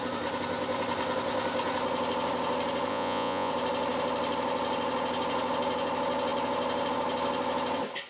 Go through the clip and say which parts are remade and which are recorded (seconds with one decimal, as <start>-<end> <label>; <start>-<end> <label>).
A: 0.0-2.9 recorded; 2.9-3.5 remade; 3.5-8.1 recorded